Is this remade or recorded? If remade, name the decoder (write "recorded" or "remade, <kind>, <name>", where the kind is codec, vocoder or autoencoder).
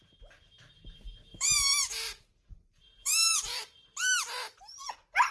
remade, vocoder, BigVGAN v2